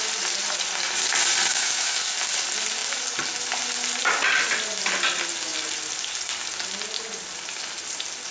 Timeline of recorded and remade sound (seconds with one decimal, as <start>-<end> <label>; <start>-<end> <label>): 0.0-1.5 recorded; 1.5-2.0 remade; 2.0-8.3 recorded